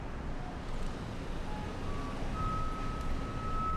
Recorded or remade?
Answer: recorded